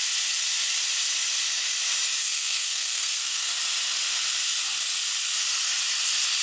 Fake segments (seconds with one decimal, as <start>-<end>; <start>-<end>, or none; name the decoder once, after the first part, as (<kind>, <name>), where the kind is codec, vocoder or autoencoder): 2.2-3.5 (codec, SNAC)